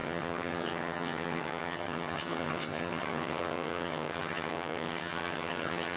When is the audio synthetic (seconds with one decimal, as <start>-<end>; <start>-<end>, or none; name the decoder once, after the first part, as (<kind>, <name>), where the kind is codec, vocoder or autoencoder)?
0.0-6.0 (vocoder, HiFi-GAN)

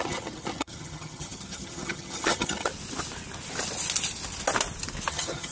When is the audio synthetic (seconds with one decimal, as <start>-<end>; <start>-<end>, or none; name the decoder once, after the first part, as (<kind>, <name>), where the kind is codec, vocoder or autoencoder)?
0.0-2.7 (vocoder, HiFi-GAN); 5.1-5.5

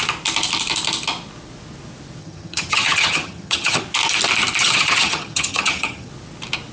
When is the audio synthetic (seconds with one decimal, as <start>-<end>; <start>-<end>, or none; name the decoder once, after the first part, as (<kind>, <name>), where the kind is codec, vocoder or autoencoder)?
2.2-3.8 (vocoder, HiFi-GAN); 4.6-6.1

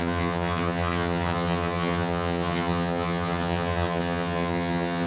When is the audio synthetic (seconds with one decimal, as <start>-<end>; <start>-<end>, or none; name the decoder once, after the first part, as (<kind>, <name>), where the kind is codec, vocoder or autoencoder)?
0.0-5.1 (vocoder, HiFi-GAN)

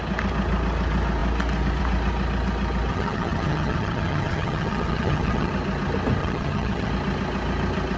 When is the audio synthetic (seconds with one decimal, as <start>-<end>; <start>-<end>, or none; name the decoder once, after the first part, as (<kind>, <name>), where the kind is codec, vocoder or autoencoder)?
2.9-5.5 (vocoder, HiFi-GAN); 6.2-6.9